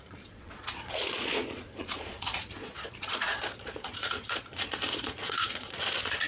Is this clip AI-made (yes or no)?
yes